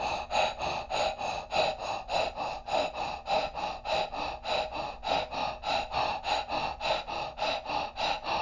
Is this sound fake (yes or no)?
no